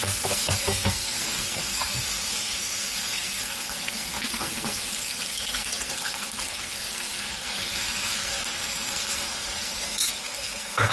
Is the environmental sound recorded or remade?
remade